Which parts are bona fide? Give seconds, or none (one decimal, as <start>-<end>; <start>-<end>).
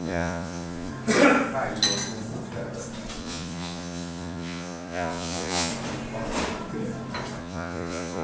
0.9-3.2; 5.7-7.4